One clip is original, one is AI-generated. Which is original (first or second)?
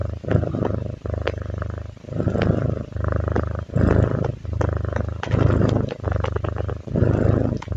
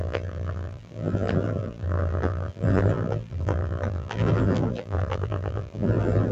first